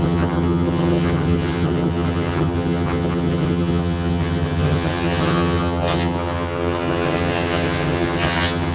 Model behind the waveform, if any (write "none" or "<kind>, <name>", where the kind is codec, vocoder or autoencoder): vocoder, HiFi-GAN